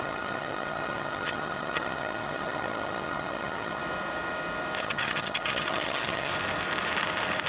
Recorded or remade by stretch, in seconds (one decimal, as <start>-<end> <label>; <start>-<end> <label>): 0.0-3.8 remade; 3.8-4.8 recorded; 4.8-6.3 remade; 6.3-7.5 recorded